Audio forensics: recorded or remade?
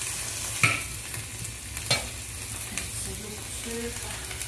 recorded